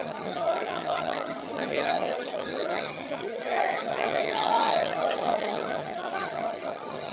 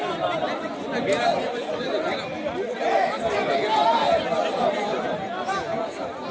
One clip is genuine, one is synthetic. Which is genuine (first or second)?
second